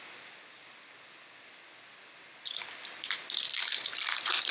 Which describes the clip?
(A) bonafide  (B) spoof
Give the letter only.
B